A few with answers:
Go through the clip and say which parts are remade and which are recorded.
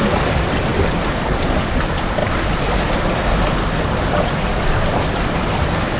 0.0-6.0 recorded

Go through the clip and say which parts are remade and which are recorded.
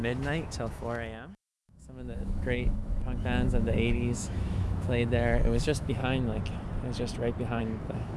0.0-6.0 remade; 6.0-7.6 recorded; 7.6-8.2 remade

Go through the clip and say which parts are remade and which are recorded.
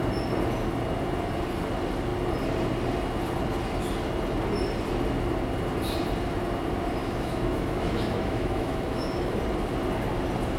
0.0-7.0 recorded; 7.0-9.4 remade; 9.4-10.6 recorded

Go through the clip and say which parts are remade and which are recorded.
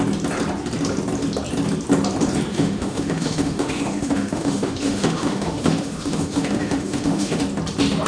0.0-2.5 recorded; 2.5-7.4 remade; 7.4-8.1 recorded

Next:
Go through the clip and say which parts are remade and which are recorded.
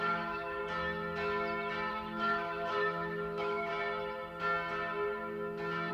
0.0-0.6 remade; 0.6-1.9 recorded; 1.9-3.7 remade; 3.7-5.9 recorded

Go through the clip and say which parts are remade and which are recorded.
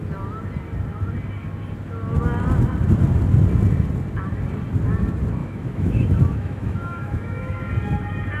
0.0-5.4 recorded; 5.4-7.7 remade; 7.7-8.4 recorded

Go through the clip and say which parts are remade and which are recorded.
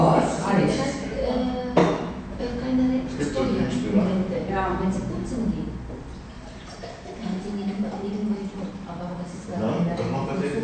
0.0-1.8 recorded; 1.8-2.4 remade; 2.4-10.6 recorded